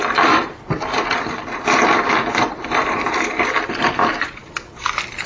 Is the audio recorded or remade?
remade